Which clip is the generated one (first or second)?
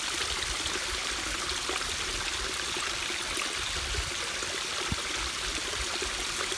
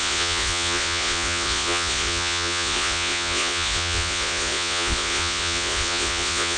second